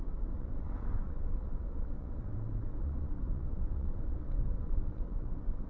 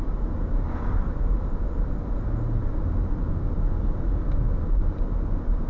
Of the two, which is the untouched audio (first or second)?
second